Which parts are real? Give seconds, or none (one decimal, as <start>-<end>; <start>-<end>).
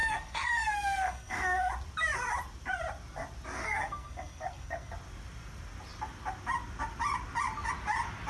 1.7-3.6; 4.9-8.3